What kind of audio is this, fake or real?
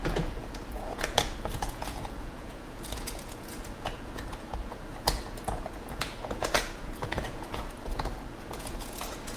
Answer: fake